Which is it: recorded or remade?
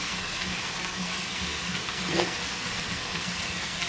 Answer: remade